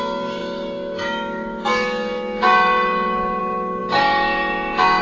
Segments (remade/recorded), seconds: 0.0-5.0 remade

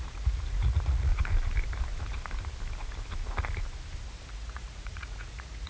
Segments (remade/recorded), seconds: 0.0-1.1 remade; 1.1-4.3 recorded; 4.3-5.7 remade

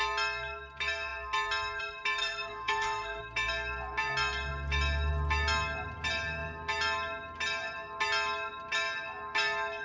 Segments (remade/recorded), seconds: 0.0-2.2 recorded; 2.2-3.2 remade; 3.2-9.8 recorded

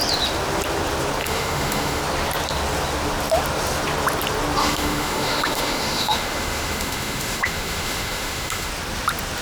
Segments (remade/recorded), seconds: 0.0-1.2 recorded; 1.2-2.0 remade; 2.0-4.6 recorded; 4.6-8.7 remade; 8.7-9.4 recorded

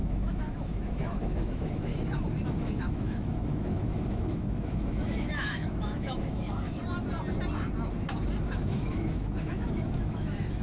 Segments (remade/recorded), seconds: 0.0-1.9 remade; 1.9-2.6 recorded; 2.6-6.8 remade; 6.8-8.6 recorded; 8.6-10.6 remade

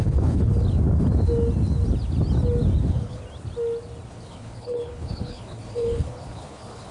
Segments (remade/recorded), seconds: 0.0-0.5 remade; 0.5-2.8 recorded; 2.8-3.2 remade; 3.2-4.1 recorded; 4.1-6.9 remade

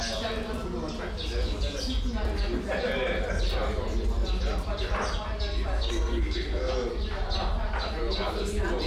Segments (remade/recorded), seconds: 0.0-5.7 recorded; 5.7-6.7 remade; 6.7-8.9 recorded

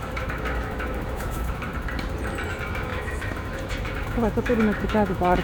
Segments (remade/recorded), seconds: 0.0-1.7 remade; 1.7-2.5 recorded; 2.5-5.4 remade